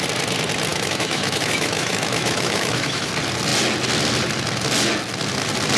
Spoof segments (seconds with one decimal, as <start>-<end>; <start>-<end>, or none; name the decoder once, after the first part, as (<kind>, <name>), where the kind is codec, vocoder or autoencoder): 0.7-3.1 (autoencoder, DAC-VAE)